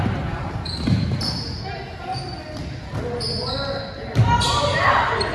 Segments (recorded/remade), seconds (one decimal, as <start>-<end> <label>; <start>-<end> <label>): 0.0-5.3 recorded

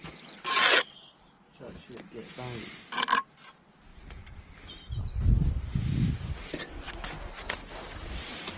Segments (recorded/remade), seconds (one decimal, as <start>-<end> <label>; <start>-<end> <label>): 0.0-8.6 recorded

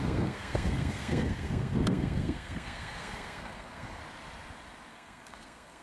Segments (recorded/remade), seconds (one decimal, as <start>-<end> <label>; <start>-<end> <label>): 0.0-4.0 remade; 4.0-4.9 recorded; 4.9-5.8 remade

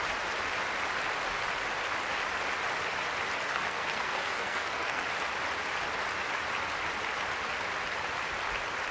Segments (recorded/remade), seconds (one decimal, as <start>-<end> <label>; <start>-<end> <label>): 0.0-3.5 recorded; 3.5-5.0 remade; 5.0-8.9 recorded